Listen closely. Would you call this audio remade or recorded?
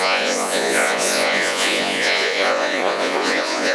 remade